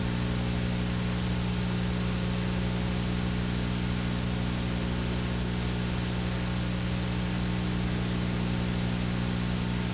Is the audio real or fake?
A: real